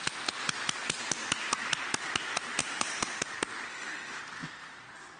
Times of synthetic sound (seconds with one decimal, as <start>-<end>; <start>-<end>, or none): 2.6-3.2; 3.7-4.2